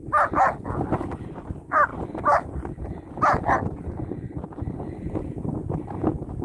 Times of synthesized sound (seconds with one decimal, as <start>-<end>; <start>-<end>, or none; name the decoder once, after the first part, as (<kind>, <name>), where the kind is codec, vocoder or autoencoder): 1.9-5.7 (vocoder, BigVGAN v2)